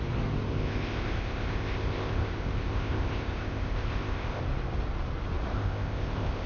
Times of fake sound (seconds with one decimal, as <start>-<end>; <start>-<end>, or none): 0.5-4.4; 5.5-6.5